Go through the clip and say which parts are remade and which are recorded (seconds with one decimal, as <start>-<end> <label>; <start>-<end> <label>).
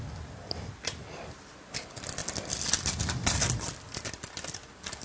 0.0-5.0 recorded